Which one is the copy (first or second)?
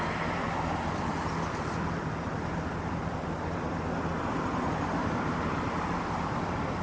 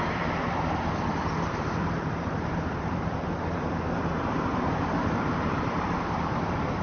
second